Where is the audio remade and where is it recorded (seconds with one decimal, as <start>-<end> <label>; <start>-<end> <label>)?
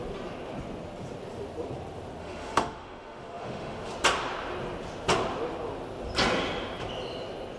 0.0-2.2 recorded; 2.2-3.9 remade; 3.9-7.6 recorded